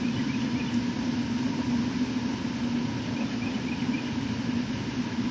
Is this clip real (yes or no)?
yes